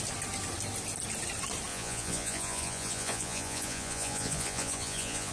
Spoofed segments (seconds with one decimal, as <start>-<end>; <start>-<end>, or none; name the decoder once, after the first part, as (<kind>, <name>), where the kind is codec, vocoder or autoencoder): 1.7-5.3 (vocoder, Vocos)